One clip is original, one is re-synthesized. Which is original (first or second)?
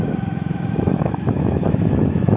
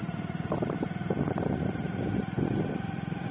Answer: second